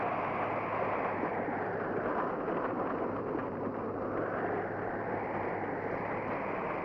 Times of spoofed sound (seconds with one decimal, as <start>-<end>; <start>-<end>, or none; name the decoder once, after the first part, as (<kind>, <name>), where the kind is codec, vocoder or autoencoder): none